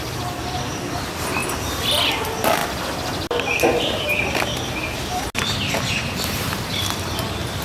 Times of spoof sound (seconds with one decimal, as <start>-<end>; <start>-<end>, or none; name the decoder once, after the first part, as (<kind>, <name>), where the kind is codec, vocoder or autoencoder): none